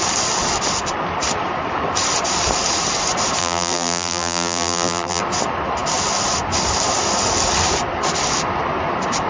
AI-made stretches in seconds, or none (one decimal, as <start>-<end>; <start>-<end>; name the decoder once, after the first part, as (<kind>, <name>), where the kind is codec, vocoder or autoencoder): 3.4-5.2 (vocoder, BigVGAN v2)